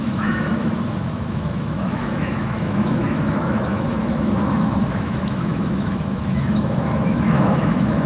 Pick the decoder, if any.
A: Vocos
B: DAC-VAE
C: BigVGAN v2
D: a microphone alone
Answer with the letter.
B